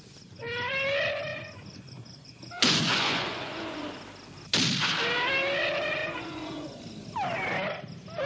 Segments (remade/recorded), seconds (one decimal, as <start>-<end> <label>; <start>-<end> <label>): 0.0-1.3 recorded; 1.3-3.8 remade; 3.8-6.0 recorded; 6.0-6.8 remade; 6.8-8.3 recorded